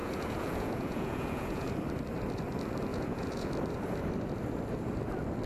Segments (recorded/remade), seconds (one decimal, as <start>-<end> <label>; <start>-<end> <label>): 0.0-1.7 remade; 1.7-2.9 recorded; 2.9-3.5 remade; 3.5-5.5 recorded